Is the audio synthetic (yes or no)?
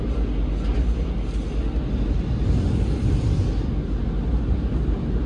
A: no